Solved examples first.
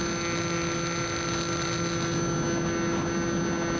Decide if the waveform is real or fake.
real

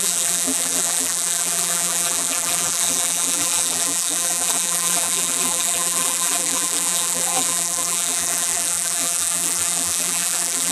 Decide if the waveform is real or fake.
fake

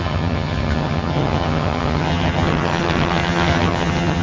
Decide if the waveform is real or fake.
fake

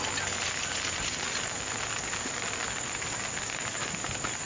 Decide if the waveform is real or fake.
real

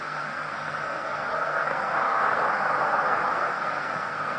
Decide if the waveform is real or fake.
fake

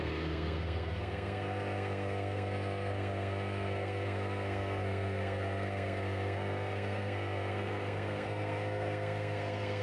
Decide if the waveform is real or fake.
fake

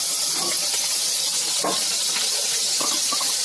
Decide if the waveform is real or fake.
real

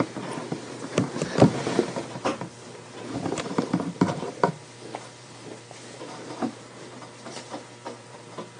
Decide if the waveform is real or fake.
fake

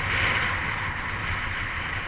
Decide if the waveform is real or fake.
real